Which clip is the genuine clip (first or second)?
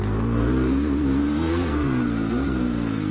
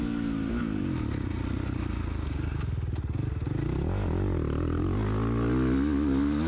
second